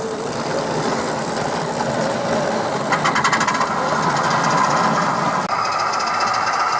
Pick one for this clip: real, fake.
real